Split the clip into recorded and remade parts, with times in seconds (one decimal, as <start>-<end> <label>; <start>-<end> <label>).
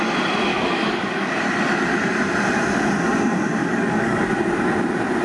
0.0-0.5 recorded; 0.5-1.4 remade; 1.4-3.6 recorded; 3.6-4.3 remade; 4.3-5.2 recorded